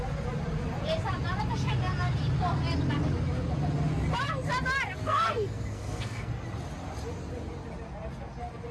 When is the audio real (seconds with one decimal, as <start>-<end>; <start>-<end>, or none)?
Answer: 0.0-5.0; 6.3-8.7